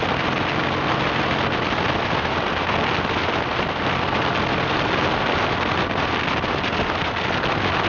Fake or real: real